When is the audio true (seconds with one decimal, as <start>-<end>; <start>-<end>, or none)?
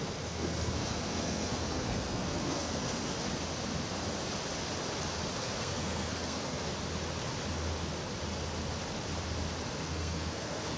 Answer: 3.1-5.4; 6.7-9.8